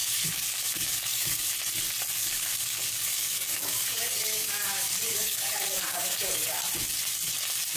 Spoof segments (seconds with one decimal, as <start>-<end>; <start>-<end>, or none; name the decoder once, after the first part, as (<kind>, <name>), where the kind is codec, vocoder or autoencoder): 0.0-1.5 (codec, DAC); 2.2-6.6